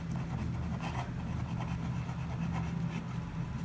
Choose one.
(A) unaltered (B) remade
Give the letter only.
A